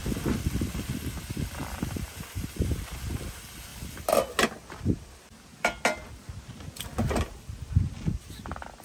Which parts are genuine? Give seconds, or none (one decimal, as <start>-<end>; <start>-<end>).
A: 0.0-1.6; 2.7-8.8